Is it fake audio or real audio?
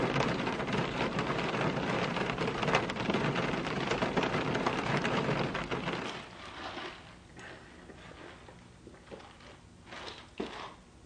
real